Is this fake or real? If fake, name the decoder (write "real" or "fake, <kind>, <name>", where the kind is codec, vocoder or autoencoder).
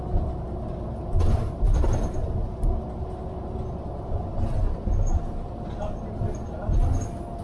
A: real